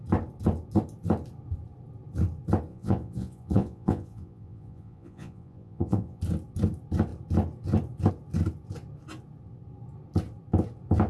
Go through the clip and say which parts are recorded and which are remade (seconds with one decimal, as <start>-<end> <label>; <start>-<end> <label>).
0.0-2.7 recorded; 2.7-6.2 remade; 6.2-11.1 recorded